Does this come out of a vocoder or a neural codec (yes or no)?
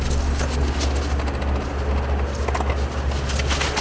no